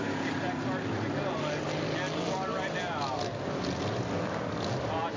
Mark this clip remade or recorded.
recorded